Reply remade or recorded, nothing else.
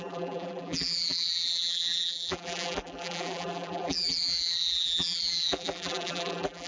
remade